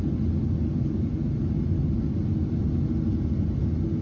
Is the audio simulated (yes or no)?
no